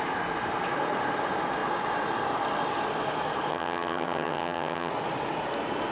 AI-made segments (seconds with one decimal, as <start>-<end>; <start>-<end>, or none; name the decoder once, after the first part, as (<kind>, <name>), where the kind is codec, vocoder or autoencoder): 3.5-4.9 (vocoder, HiFi-GAN)